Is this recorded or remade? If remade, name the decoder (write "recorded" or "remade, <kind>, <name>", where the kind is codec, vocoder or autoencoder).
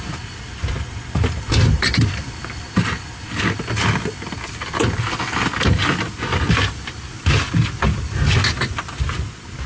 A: recorded